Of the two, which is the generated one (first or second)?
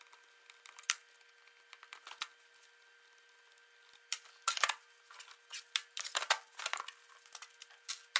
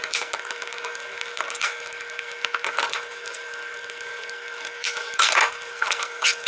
second